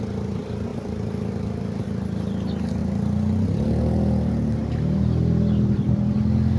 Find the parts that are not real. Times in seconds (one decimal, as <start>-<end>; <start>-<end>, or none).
none